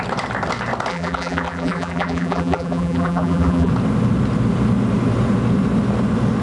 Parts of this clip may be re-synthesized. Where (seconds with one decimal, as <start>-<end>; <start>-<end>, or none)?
0.9-3.7